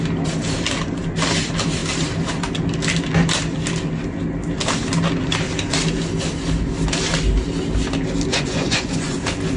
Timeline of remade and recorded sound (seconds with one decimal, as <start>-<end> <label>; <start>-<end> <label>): 0.0-8.3 recorded; 8.3-9.2 remade; 9.2-9.6 recorded